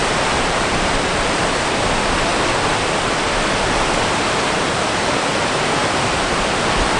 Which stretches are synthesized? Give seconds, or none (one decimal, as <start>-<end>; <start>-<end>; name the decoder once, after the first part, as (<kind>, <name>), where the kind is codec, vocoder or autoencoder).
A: 0.0-1.4 (vocoder, BigVGAN v2); 5.8-6.4